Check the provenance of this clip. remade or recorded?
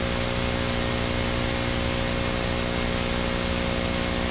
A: recorded